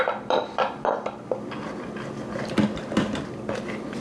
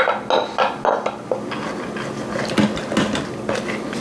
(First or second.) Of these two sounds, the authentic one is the second